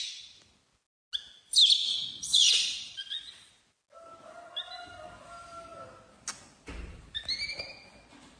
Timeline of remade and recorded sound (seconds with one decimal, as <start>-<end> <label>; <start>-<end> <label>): 0.0-1.9 recorded; 1.9-3.5 remade; 3.5-8.4 recorded